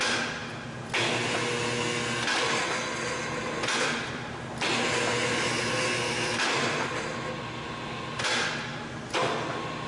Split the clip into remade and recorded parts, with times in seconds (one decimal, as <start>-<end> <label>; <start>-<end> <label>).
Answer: 0.0-9.9 recorded